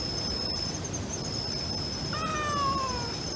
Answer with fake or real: real